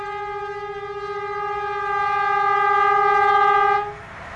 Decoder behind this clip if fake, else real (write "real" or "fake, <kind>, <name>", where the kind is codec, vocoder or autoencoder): real